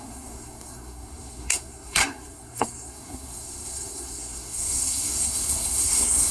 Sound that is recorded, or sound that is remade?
remade